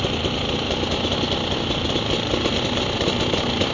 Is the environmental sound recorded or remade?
recorded